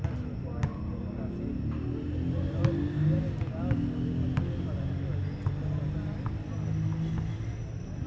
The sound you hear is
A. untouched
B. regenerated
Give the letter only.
A